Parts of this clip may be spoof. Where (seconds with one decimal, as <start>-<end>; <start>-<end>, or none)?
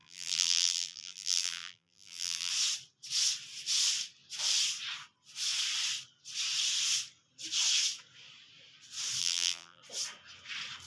0.0-2.5; 9.2-9.8